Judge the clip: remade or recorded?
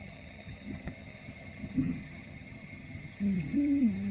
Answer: remade